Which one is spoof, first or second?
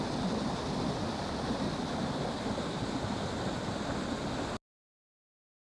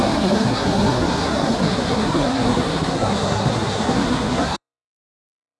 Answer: second